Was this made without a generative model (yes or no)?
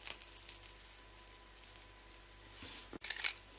yes